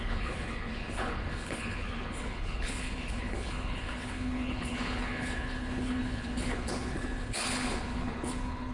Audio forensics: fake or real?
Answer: fake